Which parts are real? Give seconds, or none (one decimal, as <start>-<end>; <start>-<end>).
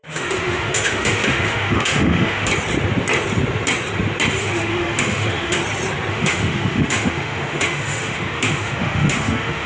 2.5-4.4; 5.6-6.1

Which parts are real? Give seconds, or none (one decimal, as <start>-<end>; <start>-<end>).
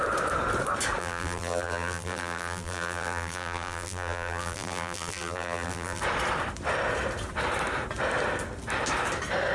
0.0-1.0; 6.0-9.5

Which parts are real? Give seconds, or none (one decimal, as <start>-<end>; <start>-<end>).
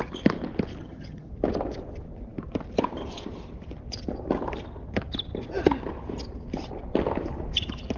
0.0-0.8; 1.3-8.0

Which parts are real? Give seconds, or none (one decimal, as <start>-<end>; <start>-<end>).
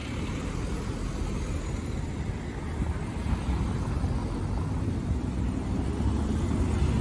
0.0-7.0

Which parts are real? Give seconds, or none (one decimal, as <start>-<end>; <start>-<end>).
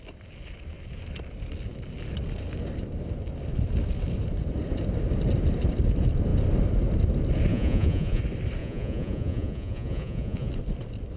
0.0-7.5; 8.2-8.6; 10.5-11.2